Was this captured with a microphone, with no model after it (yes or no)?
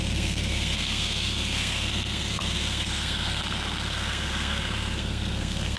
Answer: no